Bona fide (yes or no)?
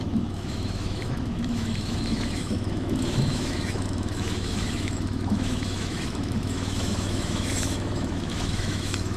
no